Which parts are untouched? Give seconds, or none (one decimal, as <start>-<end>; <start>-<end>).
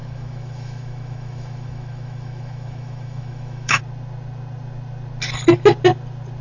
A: 3.8-6.4